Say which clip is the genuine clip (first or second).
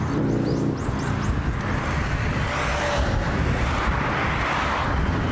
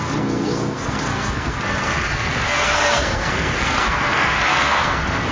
first